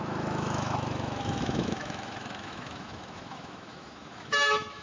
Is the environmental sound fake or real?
fake